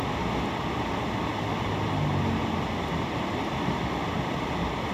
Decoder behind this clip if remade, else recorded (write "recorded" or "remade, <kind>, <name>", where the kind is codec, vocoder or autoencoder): recorded